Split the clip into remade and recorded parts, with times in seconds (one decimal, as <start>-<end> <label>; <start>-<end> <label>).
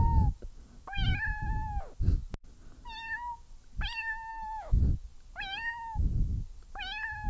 0.0-4.3 recorded; 4.3-4.8 remade; 4.8-7.3 recorded